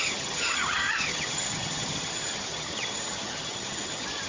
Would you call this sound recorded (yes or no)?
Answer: no